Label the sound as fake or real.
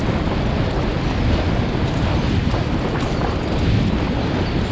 real